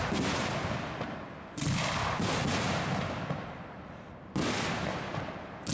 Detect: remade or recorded recorded